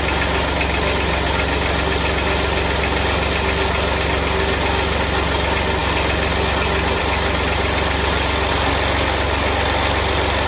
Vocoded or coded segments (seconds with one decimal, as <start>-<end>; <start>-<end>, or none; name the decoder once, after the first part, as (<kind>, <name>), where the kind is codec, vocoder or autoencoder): none